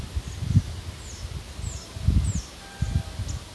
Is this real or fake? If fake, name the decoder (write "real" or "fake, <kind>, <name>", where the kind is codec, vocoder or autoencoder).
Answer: real